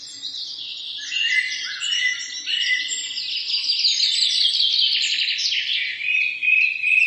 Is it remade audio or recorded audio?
recorded